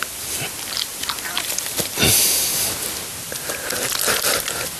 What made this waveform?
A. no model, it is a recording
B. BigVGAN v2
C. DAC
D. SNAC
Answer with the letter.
A